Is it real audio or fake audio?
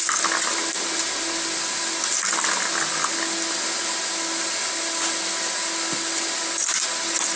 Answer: real